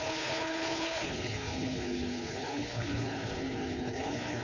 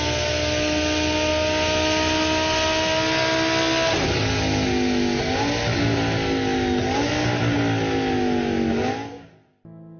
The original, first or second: second